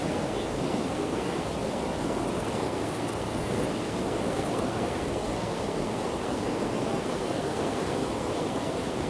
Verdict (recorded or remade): remade